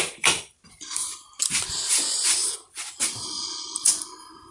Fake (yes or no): yes